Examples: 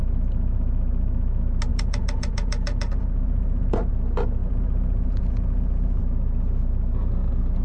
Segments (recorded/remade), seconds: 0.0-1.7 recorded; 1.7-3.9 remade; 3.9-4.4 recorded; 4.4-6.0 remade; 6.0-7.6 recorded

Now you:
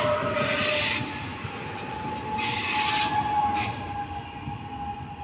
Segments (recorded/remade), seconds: 0.0-5.2 recorded

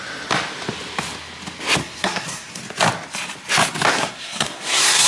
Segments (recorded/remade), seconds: 0.0-1.8 recorded; 1.8-2.6 remade; 2.6-3.9 recorded; 3.9-5.1 remade

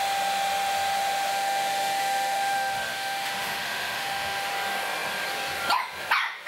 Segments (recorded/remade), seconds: 0.0-1.3 recorded; 1.3-4.5 remade; 4.5-6.5 recorded

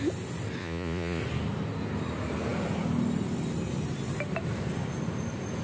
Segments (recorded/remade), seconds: 0.0-0.6 recorded; 0.6-1.2 remade; 1.2-5.6 recorded

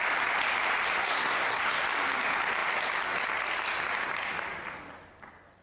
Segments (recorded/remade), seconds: 0.0-1.0 recorded; 1.0-1.8 remade; 1.8-5.6 recorded

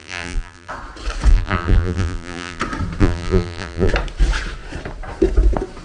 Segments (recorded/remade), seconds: 0.0-0.7 remade; 0.7-1.3 recorded; 1.3-2.6 remade; 2.6-3.0 recorded; 3.0-3.9 remade; 3.9-5.8 recorded

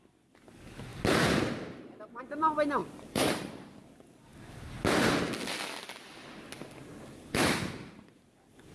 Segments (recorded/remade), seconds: 0.0-2.8 recorded; 2.8-3.4 remade; 3.4-8.7 recorded